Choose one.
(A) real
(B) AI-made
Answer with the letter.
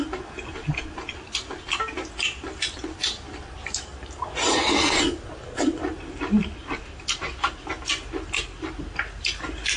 A